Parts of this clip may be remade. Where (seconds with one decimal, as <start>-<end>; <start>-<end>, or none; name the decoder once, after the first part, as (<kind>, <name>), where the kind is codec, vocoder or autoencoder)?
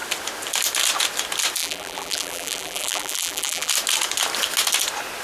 1.6-3.7 (vocoder, BigVGAN v2)